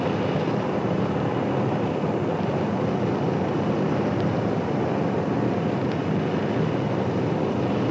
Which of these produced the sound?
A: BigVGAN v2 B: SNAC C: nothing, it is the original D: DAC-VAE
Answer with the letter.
A